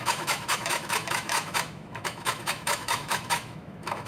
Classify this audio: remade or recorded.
remade